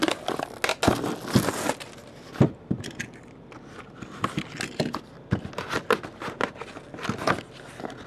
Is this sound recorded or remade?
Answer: recorded